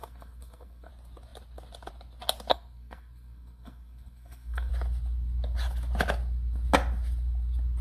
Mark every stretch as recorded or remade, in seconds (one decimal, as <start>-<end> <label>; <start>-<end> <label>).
0.0-0.9 remade; 0.9-2.5 recorded; 2.5-4.7 remade; 4.7-7.8 recorded